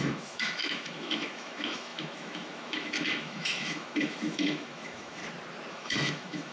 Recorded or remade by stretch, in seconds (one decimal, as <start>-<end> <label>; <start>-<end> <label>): 0.0-5.2 remade; 5.2-5.7 recorded; 5.7-6.5 remade